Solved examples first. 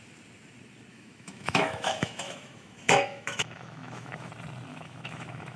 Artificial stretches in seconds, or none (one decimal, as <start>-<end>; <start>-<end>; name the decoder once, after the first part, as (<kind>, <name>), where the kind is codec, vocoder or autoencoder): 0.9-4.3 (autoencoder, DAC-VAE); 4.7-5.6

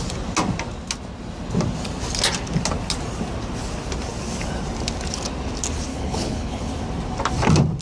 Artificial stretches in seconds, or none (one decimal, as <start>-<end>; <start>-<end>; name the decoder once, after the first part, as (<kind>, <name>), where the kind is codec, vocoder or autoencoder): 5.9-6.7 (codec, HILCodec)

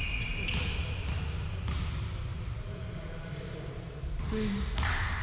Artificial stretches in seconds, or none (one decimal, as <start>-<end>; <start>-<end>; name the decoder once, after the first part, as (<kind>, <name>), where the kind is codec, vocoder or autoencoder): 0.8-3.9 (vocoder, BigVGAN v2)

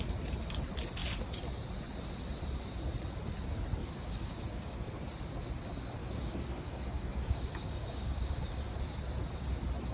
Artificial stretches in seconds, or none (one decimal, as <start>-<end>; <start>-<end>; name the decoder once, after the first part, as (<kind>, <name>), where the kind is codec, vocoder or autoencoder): 3.8-4.9 (codec, DAC); 6.0-8.8

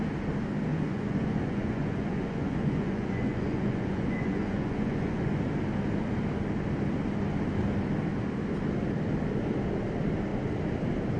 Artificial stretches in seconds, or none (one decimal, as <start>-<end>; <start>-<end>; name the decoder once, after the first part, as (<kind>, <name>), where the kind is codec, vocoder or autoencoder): 0.7-5.5 (vocoder, Vocos)